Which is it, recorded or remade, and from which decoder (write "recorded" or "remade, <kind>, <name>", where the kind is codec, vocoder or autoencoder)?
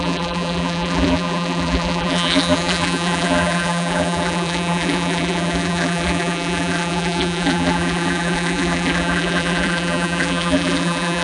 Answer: remade, vocoder, BigVGAN v2